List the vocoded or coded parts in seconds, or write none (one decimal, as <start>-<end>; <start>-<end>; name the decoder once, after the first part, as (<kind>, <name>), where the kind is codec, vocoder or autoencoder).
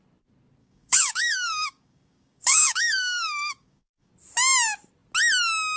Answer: 0.6-4.1 (codec, DAC)